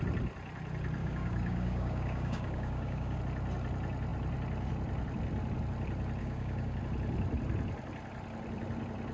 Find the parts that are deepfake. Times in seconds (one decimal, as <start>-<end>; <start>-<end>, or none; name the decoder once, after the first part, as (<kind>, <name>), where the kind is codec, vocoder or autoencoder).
1.0-3.2 (codec, DAC); 6.2-6.8